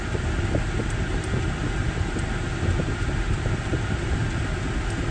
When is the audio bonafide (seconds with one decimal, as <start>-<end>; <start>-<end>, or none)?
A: 0.0-5.1